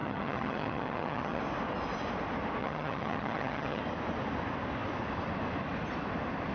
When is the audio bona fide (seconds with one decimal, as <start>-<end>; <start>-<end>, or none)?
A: 1.4-2.6; 3.8-6.5